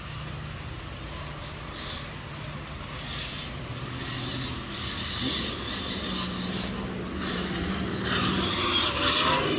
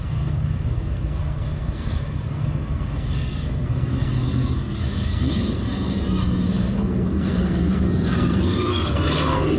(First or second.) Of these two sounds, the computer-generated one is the second